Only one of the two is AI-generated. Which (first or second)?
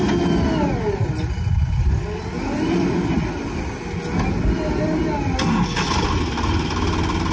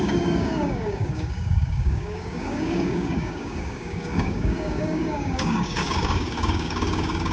second